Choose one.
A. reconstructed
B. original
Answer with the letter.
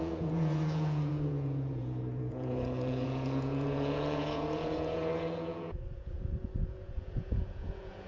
A